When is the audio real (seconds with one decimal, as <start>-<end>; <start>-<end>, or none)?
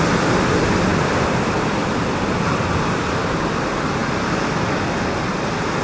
0.0-5.8